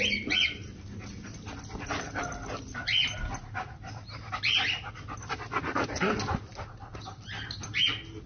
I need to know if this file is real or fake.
real